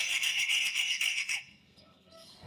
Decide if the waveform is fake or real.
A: fake